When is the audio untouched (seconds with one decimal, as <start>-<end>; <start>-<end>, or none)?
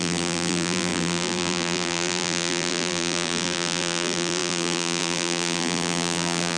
none